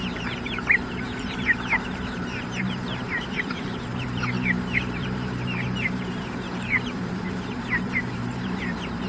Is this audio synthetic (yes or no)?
yes